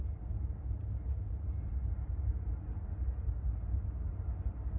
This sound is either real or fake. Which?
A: real